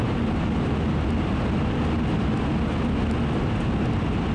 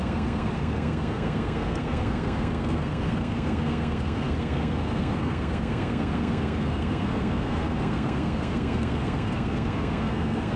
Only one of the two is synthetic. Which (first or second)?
second